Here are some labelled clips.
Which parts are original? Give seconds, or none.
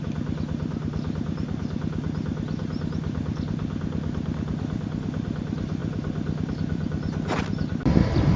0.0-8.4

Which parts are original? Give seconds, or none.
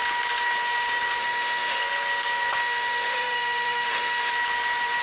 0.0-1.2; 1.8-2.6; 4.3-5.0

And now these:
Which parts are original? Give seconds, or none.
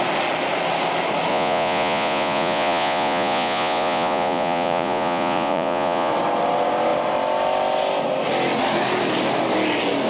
0.0-1.3; 6.1-10.1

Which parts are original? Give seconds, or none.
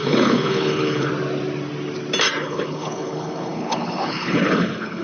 1.1-2.4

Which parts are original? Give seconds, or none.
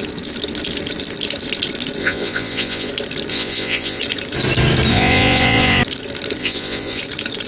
0.0-2.0; 2.9-3.3; 4.0-4.9; 5.8-6.4; 7.0-7.5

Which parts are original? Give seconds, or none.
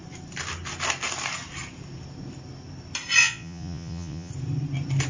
0.0-3.2; 4.3-5.1